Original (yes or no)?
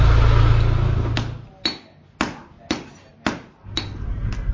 yes